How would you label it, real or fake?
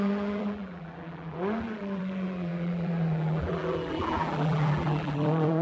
fake